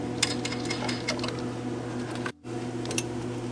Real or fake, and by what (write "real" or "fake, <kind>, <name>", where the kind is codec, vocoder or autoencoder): real